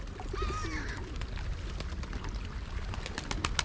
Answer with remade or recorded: recorded